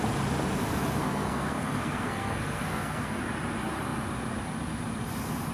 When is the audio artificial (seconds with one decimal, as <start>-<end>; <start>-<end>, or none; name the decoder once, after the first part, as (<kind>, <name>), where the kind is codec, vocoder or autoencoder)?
1.0-3.2 (codec, SNAC)